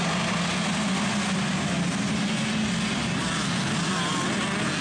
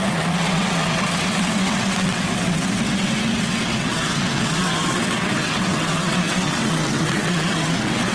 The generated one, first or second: second